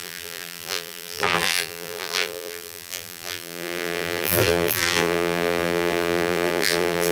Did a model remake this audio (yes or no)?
yes